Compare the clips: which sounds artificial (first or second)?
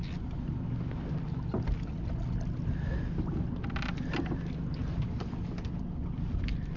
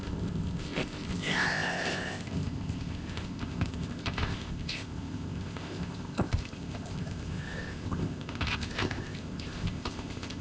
second